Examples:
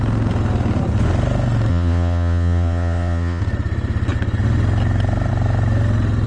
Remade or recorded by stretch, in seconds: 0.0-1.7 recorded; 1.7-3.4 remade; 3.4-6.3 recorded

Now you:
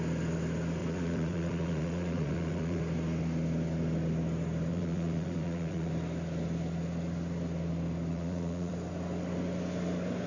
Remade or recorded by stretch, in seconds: 0.0-0.8 recorded; 0.8-2.8 remade; 2.8-4.7 recorded; 4.7-5.9 remade; 5.9-8.1 recorded; 8.1-8.7 remade; 8.7-10.3 recorded

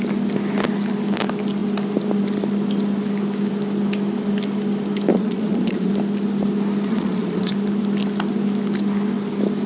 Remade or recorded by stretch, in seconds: 0.0-5.1 recorded; 5.1-5.9 remade; 5.9-6.9 recorded; 6.9-7.5 remade; 7.5-9.7 recorded

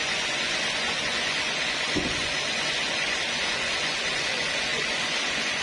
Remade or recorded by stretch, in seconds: 0.0-5.6 remade

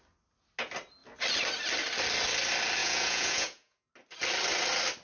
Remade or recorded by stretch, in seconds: 0.0-2.8 recorded; 2.8-3.9 remade; 3.9-5.0 recorded